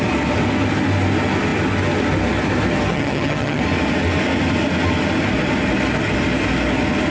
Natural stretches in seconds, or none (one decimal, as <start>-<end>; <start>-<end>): 0.0-2.9; 3.6-7.1